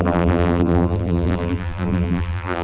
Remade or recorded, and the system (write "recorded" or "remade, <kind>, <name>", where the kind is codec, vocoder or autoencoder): remade, vocoder, BigVGAN v2